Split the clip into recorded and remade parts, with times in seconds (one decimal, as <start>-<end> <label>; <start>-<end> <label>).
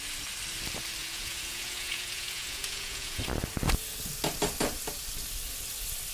0.0-1.0 recorded; 1.0-3.2 remade; 3.2-6.1 recorded